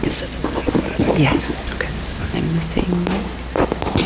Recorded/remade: recorded